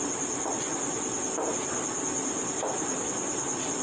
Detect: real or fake real